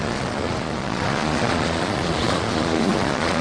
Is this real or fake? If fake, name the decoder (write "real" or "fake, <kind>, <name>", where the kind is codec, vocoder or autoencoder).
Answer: fake, vocoder, Vocos